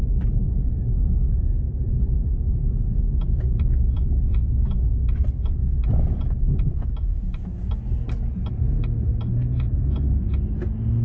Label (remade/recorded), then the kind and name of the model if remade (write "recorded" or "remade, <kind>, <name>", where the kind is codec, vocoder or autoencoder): recorded